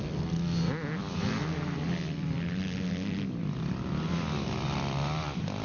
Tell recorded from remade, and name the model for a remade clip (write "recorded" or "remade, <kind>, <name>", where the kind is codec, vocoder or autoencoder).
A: recorded